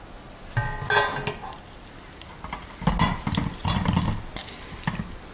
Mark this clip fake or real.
real